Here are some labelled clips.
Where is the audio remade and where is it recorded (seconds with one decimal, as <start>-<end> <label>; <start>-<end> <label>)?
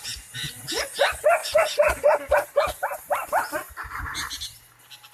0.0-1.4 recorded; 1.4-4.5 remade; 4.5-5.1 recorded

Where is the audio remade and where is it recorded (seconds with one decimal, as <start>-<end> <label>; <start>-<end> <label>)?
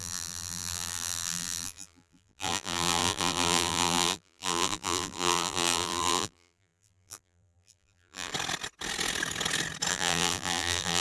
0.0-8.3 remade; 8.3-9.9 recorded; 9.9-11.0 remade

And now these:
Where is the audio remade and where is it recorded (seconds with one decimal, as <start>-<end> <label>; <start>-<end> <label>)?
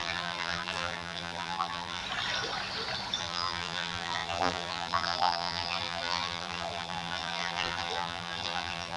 0.0-2.0 remade; 2.0-3.2 recorded; 3.2-9.0 remade